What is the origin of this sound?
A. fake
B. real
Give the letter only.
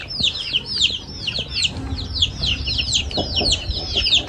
B